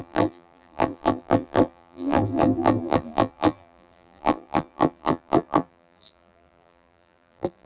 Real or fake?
fake